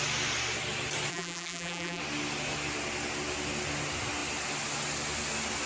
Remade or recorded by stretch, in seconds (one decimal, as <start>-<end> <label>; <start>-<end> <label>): 0.0-1.1 recorded; 1.1-2.0 remade; 2.0-5.7 recorded